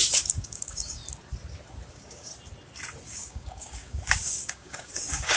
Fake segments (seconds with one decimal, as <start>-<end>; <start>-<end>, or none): 0.0-1.0; 1.9-2.3; 3.1-5.4